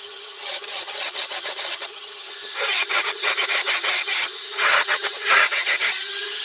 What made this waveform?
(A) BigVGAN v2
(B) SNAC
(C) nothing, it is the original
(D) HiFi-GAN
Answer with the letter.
D